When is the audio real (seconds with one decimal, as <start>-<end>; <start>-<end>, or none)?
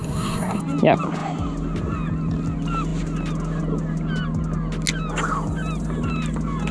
0.6-6.7